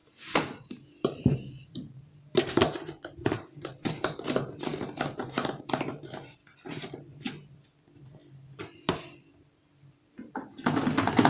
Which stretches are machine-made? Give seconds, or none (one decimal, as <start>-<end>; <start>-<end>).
0.0-6.4; 9.0-10.5